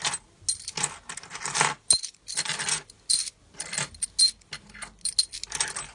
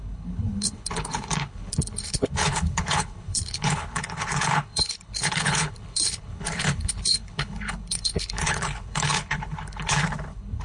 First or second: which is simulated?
second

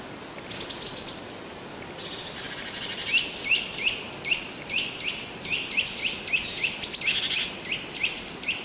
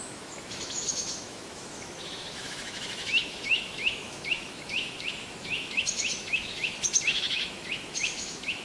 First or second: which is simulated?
second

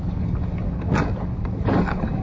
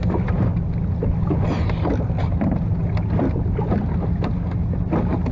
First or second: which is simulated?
first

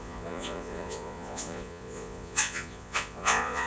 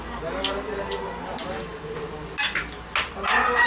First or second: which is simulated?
first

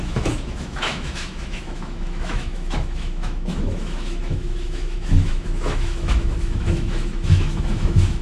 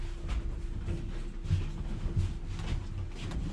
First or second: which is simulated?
first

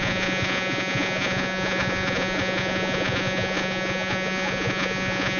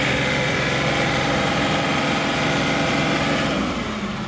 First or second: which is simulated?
first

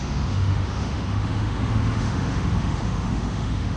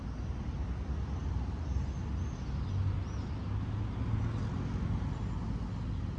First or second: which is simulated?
first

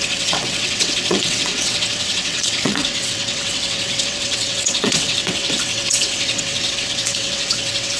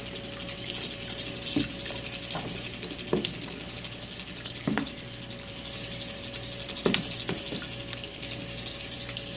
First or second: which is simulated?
first